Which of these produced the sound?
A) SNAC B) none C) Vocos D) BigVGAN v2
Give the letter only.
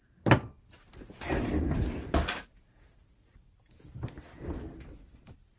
B